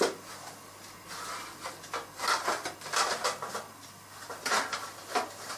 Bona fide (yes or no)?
yes